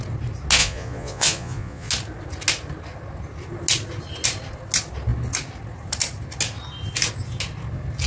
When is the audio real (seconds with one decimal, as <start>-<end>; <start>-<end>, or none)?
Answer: 0.0-0.6; 1.9-8.1